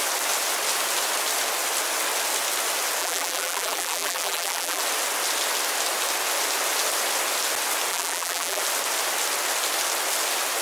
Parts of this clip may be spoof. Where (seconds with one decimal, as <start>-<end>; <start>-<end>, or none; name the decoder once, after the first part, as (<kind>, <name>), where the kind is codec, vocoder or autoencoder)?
3.0-4.8 (vocoder, BigVGAN v2); 7.9-8.6